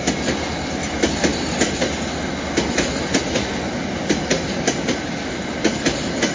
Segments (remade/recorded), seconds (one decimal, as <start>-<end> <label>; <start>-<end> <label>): 0.0-6.3 recorded

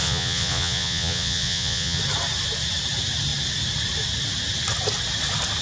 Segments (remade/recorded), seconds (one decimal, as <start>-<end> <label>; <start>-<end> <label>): 0.0-2.0 remade; 2.0-5.6 recorded

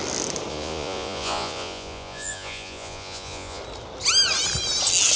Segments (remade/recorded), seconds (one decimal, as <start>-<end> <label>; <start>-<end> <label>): 0.0-0.5 recorded; 0.5-3.6 remade; 3.6-5.2 recorded

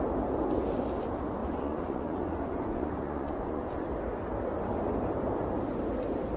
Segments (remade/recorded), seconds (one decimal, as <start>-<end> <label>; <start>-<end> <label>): 0.0-1.4 recorded; 1.4-3.8 remade; 3.8-6.4 recorded

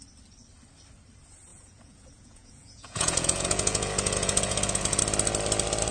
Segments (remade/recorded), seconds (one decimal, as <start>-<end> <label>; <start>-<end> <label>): 0.0-1.5 recorded; 1.5-5.0 remade; 5.0-5.9 recorded